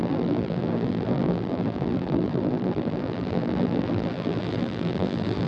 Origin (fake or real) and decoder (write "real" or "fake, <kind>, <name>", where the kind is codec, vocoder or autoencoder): fake, vocoder, BigVGAN v2